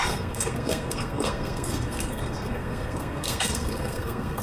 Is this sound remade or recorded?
remade